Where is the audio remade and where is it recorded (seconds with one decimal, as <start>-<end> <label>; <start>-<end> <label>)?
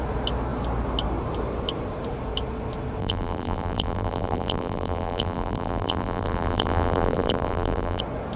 0.0-3.0 recorded; 3.0-8.0 remade; 8.0-8.4 recorded